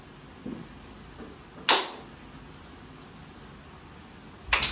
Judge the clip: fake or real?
real